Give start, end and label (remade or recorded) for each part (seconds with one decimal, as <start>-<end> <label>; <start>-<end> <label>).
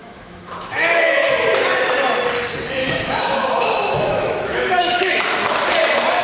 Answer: 0.0-1.3 remade; 1.3-2.8 recorded; 2.8-5.1 remade; 5.1-6.2 recorded